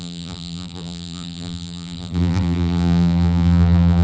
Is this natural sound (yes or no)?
no